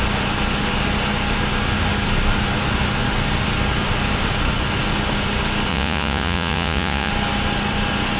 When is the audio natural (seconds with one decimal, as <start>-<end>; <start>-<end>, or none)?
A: 0.0-5.7; 7.1-8.2

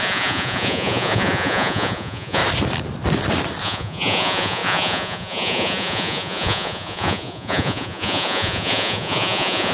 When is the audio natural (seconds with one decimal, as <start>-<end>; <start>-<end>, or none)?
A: 2.4-3.6

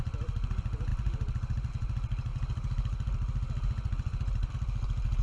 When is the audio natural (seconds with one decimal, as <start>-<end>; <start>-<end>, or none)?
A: 0.0-0.9; 1.7-5.2

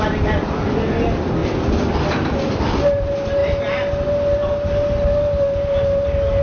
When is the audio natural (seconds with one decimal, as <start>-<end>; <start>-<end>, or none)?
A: 0.0-6.4

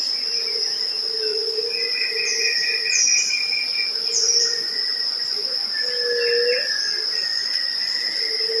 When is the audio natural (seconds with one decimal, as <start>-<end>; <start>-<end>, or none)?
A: 0.0-1.3; 5.7-7.3; 7.9-8.6